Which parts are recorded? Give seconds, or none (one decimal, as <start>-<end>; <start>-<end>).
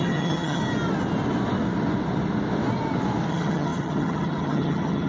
0.6-3.3